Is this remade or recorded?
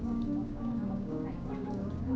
remade